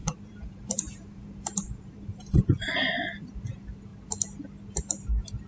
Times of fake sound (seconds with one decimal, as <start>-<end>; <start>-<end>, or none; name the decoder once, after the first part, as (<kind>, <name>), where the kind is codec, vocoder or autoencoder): 0.0-3.3 (vocoder, BigVGAN v2)